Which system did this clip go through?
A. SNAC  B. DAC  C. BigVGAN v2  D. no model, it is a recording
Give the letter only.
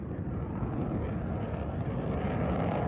D